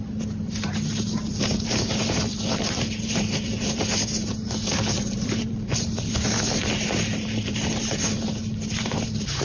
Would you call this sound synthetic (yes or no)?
yes